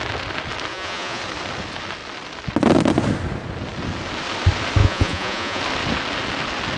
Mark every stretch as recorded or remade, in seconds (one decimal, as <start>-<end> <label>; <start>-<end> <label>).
0.0-0.7 recorded; 0.7-1.2 remade; 1.2-4.8 recorded; 4.8-5.6 remade; 5.6-6.8 recorded